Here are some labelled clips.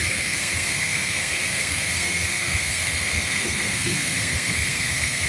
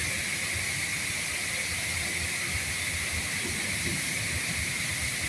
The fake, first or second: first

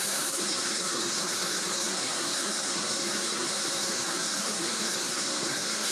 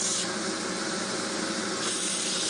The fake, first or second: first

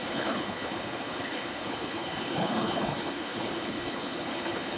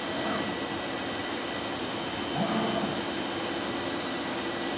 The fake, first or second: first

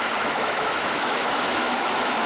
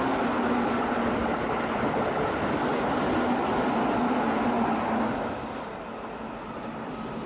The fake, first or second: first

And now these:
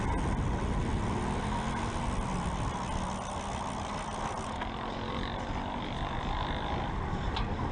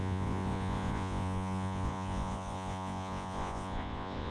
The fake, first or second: second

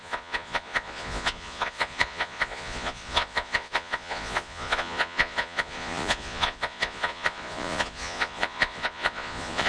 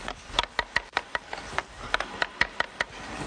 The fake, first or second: first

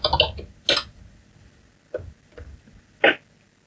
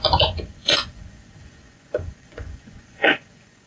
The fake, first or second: second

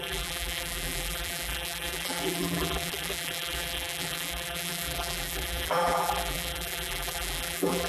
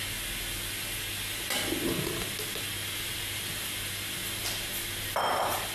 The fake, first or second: first